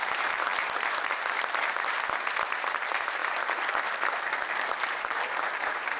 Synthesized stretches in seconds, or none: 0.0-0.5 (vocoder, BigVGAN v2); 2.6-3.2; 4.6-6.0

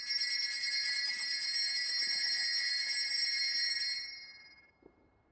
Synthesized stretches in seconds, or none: 0.0-1.2 (vocoder, BigVGAN v2); 4.4-5.3

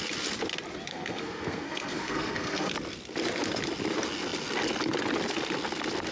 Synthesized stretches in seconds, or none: 0.9-2.7 (codec, SNAC)

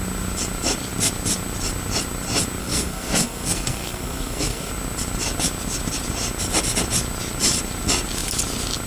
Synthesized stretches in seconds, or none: 2.6-4.7 (codec, SNAC)

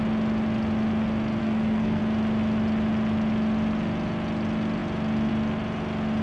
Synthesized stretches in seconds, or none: 1.4-2.0 (codec, SNAC)

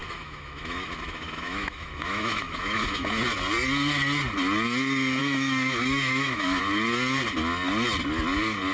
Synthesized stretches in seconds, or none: 0.0-3.2 (autoencoder, DAC-VAE); 5.2-6.6